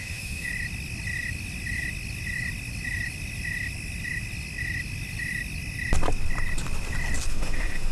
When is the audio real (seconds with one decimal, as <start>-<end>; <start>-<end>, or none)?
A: 0.5-7.3